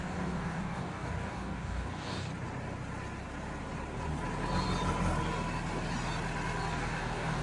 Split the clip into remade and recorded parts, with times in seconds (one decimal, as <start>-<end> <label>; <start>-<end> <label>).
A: 0.0-2.3 remade; 2.3-6.7 recorded; 6.7-7.4 remade